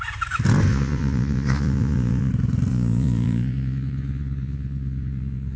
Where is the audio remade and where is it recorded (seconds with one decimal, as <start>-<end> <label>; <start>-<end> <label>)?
0.0-0.7 recorded; 0.7-2.3 remade; 2.3-2.7 recorded; 2.7-5.6 remade

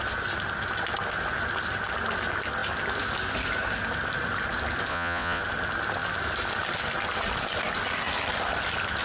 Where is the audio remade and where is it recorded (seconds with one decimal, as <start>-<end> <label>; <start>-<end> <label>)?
0.0-4.9 recorded; 4.9-5.4 remade; 5.4-9.0 recorded

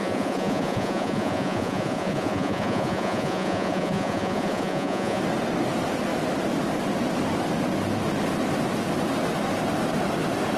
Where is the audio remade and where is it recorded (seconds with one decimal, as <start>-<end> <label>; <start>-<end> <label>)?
0.0-5.2 remade; 5.2-10.6 recorded

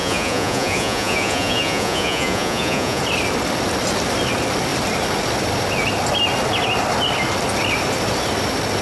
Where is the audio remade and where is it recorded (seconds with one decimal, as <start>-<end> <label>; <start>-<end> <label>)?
0.0-3.0 remade; 3.0-8.8 recorded

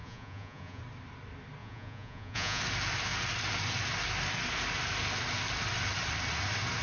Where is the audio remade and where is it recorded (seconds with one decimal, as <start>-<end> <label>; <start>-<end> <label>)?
0.0-0.8 remade; 0.8-1.6 recorded; 1.6-2.6 remade; 2.6-6.8 recorded

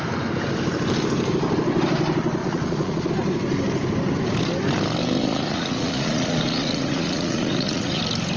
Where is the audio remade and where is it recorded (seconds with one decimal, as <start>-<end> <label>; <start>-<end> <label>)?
0.0-2.4 recorded; 2.4-3.1 remade; 3.1-5.2 recorded; 5.2-8.0 remade; 8.0-8.4 recorded

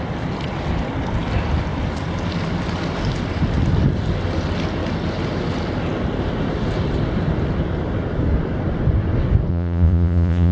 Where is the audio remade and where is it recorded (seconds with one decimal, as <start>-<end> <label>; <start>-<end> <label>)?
0.0-9.5 recorded; 9.5-10.5 remade

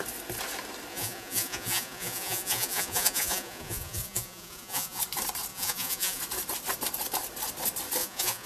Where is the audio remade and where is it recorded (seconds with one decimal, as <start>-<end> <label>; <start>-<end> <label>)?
0.0-0.9 recorded; 0.9-5.0 remade; 5.0-5.5 recorded; 5.5-6.2 remade; 6.2-8.0 recorded; 8.0-8.5 remade